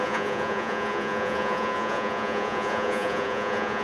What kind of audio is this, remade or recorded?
remade